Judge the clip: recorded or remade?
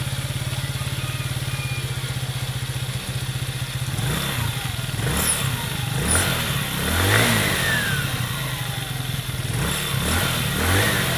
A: recorded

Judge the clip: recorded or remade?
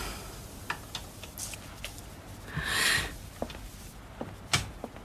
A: recorded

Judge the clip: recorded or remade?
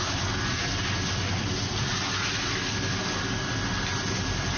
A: recorded